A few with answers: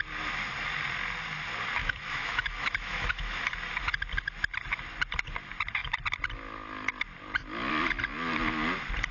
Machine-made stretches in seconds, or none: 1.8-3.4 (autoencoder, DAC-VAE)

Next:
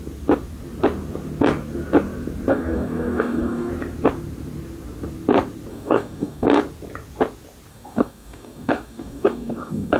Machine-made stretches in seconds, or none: 2.5-3.7 (codec, DAC); 5.7-6.6; 7.7-10.0